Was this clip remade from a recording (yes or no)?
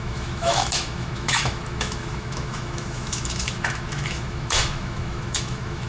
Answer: yes